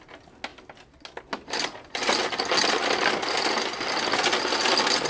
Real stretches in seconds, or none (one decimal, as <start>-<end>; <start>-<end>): 0.0-5.1